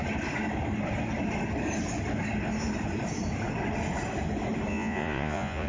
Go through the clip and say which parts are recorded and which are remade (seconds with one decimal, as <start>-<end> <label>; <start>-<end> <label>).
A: 0.0-4.7 recorded; 4.7-5.7 remade

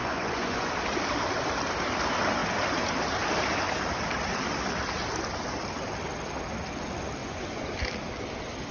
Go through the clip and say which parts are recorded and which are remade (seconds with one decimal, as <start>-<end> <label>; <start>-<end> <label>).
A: 0.0-0.7 remade; 0.7-7.2 recorded; 7.2-7.7 remade; 7.7-8.7 recorded

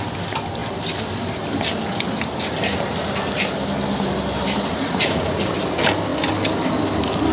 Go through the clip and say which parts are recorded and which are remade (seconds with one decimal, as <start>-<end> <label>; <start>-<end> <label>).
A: 0.0-4.7 recorded; 4.7-5.5 remade; 5.5-7.3 recorded

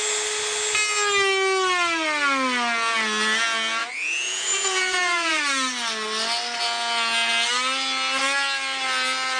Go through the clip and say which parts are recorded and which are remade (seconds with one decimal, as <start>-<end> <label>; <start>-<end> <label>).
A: 0.0-3.8 recorded; 3.8-5.4 remade; 5.4-9.4 recorded

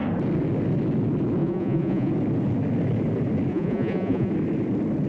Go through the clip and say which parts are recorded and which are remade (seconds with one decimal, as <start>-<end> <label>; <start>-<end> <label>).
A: 0.0-1.4 recorded; 1.4-2.1 remade; 2.1-3.5 recorded; 3.5-4.3 remade; 4.3-5.1 recorded

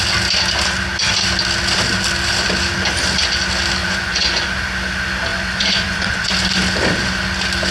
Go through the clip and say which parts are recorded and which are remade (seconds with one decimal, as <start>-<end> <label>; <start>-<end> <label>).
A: 0.0-3.8 recorded; 3.8-4.5 remade; 4.5-5.3 recorded; 5.3-6.3 remade; 6.3-7.7 recorded